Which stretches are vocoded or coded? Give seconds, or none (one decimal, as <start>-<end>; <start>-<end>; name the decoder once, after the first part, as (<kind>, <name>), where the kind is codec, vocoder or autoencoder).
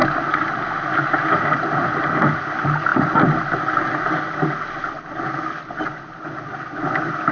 none